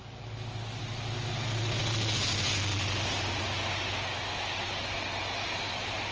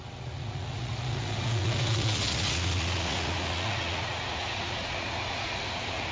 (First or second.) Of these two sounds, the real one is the first